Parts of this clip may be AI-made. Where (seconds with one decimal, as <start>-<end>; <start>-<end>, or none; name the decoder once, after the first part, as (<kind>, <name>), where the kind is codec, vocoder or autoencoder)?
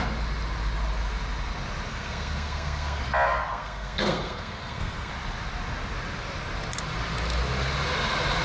1.9-3.0 (codec, SNAC); 3.4-5.1